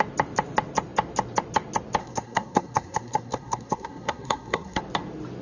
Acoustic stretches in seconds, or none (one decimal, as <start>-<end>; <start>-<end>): 0.0-2.0; 4.8-5.4